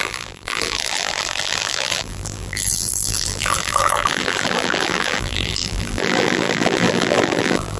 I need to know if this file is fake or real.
fake